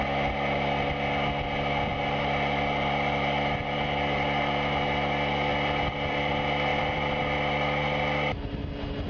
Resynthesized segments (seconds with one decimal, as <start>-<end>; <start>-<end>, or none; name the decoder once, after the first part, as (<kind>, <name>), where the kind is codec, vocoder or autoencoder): 5.5-6.3 (vocoder, BigVGAN v2); 6.7-7.2